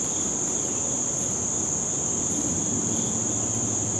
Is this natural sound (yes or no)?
yes